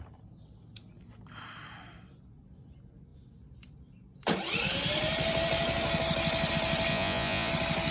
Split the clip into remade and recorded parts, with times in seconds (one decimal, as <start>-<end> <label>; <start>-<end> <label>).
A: 0.0-6.9 recorded; 6.9-7.5 remade; 7.5-7.9 recorded